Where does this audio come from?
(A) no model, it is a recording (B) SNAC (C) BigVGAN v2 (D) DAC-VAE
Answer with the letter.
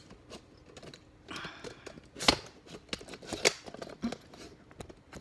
A